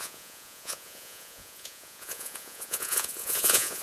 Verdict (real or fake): fake